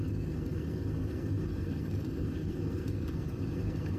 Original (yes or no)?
no